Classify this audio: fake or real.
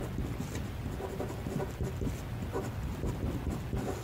real